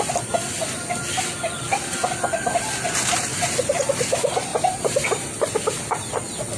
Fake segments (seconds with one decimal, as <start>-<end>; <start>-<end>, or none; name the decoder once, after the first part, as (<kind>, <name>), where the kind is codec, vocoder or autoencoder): 3.3-3.9 (vocoder, BigVGAN v2); 4.5-5.3